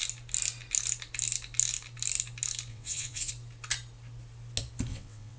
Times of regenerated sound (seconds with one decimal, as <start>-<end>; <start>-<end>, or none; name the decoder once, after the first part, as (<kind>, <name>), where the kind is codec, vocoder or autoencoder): 2.7-3.3 (vocoder, WaveNeXt); 4.9-5.4